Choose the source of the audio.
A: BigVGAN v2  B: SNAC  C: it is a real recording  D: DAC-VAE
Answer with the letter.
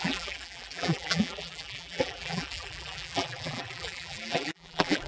A